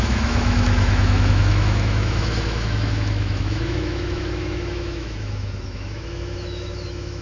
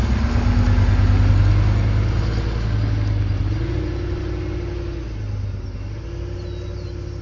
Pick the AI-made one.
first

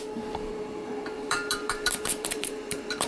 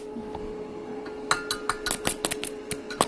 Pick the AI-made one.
first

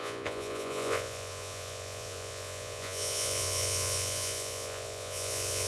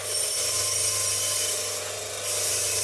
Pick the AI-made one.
first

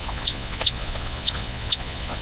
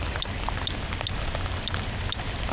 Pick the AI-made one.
first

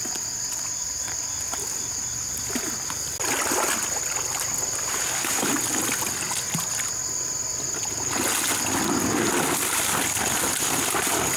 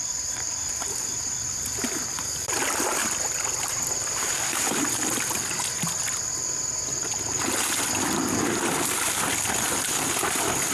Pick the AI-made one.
second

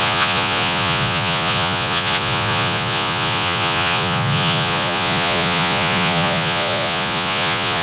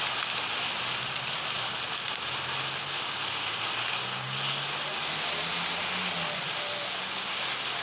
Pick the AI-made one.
first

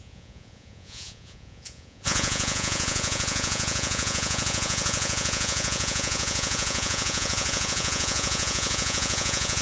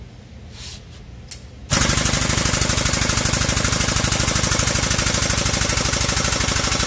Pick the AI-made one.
first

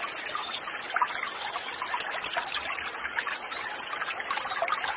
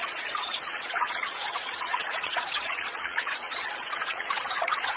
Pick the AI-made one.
second